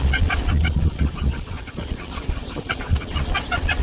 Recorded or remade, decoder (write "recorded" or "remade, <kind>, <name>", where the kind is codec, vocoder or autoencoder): remade, vocoder, Vocos